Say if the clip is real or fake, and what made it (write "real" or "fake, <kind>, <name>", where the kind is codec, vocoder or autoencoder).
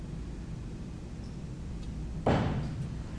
real